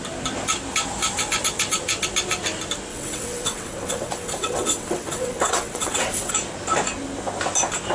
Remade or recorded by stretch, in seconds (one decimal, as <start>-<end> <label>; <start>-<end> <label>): 0.0-2.9 recorded; 2.9-6.3 remade; 6.3-7.9 recorded